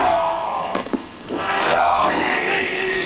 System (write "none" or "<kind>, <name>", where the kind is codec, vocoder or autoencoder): codec, SNAC